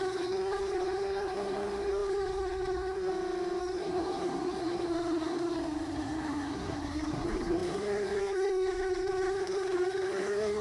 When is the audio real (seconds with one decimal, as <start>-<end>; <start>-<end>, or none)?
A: 3.1-3.6